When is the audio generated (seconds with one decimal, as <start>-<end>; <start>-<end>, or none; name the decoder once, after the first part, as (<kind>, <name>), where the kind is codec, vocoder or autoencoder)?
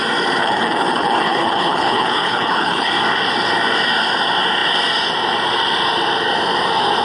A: 0.4-2.9 (codec, HILCodec)